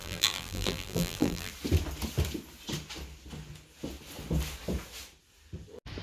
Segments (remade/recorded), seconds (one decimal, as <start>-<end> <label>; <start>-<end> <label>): 0.0-1.5 remade; 1.5-6.0 recorded